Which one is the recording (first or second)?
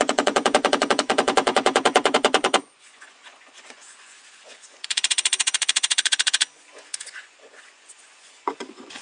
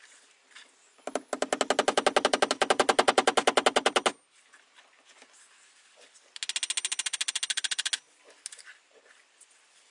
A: second